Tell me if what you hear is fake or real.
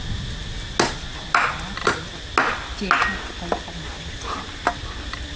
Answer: real